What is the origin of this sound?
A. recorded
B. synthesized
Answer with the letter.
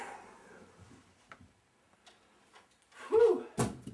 A